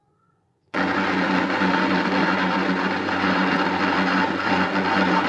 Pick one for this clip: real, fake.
fake